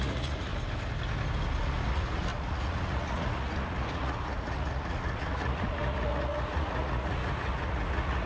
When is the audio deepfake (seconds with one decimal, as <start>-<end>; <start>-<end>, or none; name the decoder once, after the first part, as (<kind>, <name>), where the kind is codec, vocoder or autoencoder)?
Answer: 0.0-0.5 (vocoder, Vocos); 1.6-8.3